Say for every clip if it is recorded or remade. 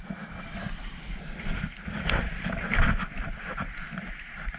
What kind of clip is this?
remade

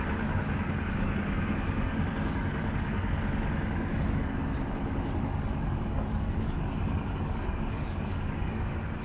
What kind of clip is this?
remade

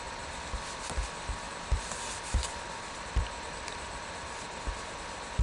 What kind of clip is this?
recorded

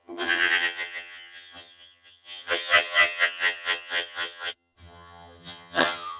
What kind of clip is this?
remade